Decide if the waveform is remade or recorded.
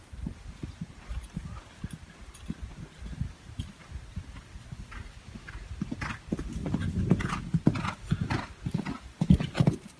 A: recorded